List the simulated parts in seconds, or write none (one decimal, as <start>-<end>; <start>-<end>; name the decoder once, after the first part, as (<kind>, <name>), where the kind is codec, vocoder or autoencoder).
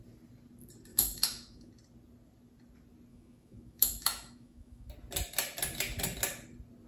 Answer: 0.9-1.7 (autoencoder, DAC-VAE); 3.1-4.9